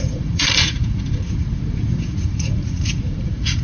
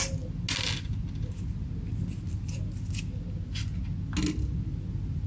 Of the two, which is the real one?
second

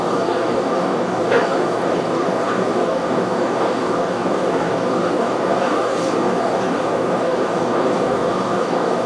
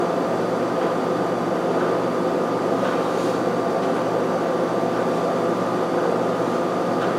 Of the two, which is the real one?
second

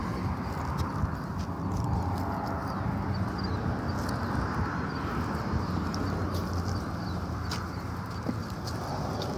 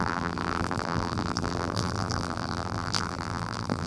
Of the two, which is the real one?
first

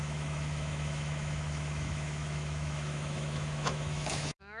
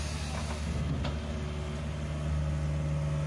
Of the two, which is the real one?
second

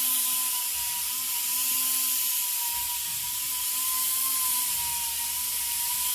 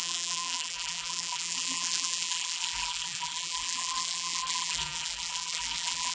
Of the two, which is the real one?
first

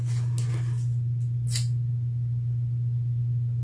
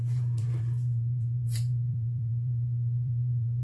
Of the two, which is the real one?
first